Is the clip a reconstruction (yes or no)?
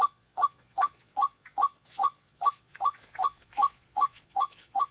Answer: yes